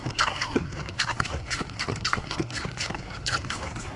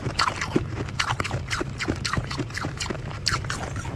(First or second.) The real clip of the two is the second